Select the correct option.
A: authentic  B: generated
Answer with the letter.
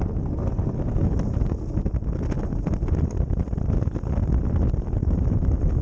A